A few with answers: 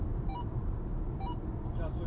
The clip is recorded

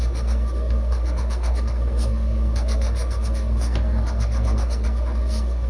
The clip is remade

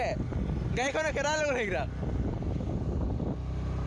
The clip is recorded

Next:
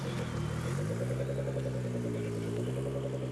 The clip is recorded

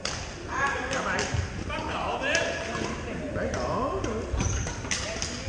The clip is recorded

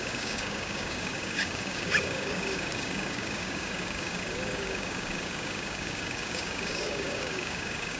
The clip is remade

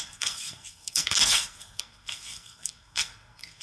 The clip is remade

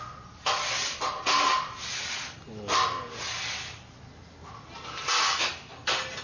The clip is recorded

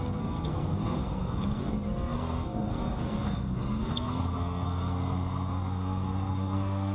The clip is remade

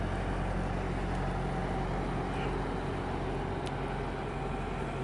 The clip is recorded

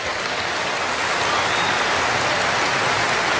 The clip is recorded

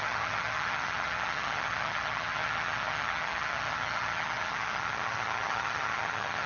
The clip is remade